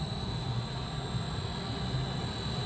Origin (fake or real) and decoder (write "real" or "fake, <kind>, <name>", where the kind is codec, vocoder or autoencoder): real